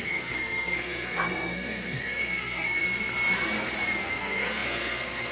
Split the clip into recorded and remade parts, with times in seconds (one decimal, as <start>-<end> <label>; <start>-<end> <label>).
0.0-2.8 remade; 2.8-4.0 recorded; 4.0-5.3 remade